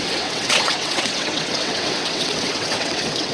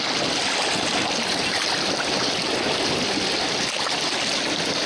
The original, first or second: second